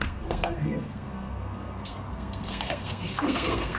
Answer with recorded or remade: remade